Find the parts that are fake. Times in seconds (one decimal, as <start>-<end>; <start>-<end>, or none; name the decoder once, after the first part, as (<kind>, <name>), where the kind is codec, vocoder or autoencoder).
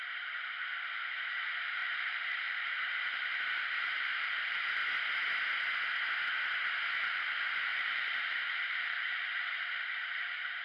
0.0-4.8 (vocoder, BigVGAN v2); 7.0-10.6